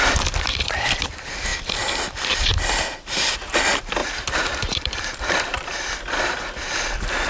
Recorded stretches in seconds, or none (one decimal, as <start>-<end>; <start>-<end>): 0.0-4.0